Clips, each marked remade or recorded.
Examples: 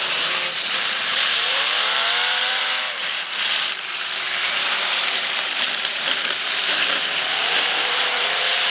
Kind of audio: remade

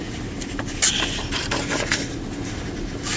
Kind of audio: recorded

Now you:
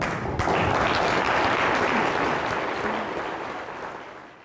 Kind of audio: recorded